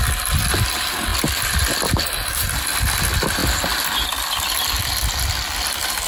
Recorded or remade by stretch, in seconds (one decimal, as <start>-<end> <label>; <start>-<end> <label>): 0.0-6.1 recorded